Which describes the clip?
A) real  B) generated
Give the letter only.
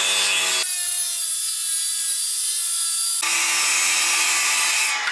A